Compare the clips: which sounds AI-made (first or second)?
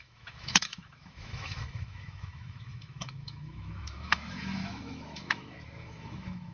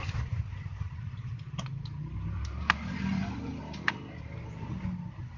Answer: first